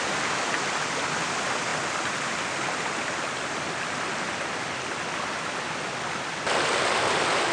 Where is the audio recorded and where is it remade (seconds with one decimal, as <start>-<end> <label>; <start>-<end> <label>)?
0.0-7.5 recorded